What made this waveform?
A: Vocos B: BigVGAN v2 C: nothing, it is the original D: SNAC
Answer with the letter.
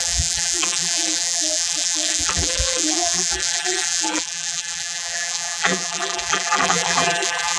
B